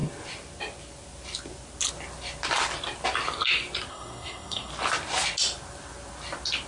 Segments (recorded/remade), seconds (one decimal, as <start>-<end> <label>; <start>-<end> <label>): 0.0-3.9 recorded; 3.9-4.7 remade; 4.7-6.7 recorded